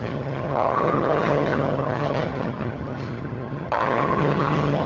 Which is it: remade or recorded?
remade